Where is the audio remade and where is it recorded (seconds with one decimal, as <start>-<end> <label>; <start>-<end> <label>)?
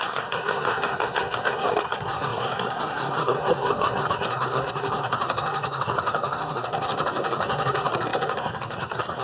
0.0-9.2 remade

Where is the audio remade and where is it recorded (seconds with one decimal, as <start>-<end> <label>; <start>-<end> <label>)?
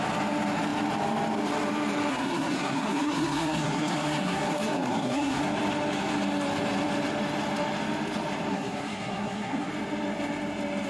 0.0-2.1 recorded; 2.1-5.4 remade; 5.4-8.5 recorded; 8.5-9.7 remade; 9.7-10.9 recorded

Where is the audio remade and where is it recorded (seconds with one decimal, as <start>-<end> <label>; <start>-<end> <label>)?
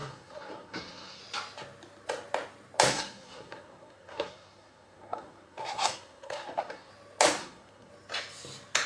0.0-1.2 remade; 1.2-2.9 recorded; 2.9-6.9 remade; 6.9-7.4 recorded; 7.4-7.9 remade; 7.9-8.9 recorded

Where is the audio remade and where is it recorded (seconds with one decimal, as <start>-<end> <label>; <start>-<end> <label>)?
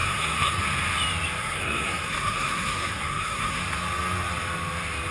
0.0-0.6 remade; 0.6-1.4 recorded; 1.4-3.6 remade; 3.6-5.1 recorded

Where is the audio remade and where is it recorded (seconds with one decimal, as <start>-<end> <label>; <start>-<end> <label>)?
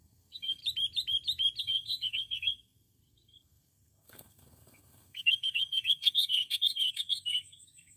0.0-0.6 remade; 0.6-1.6 recorded; 1.6-8.0 remade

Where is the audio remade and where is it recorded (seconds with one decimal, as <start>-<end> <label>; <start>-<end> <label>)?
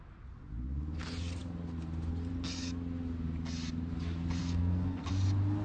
0.0-4.4 recorded; 4.4-5.1 remade; 5.1-5.6 recorded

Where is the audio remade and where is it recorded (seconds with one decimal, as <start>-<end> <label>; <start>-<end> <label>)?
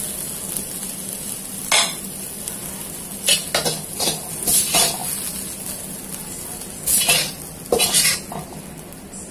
0.0-9.3 recorded